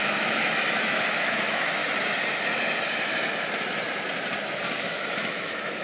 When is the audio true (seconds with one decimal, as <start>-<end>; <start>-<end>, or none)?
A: 1.8-4.8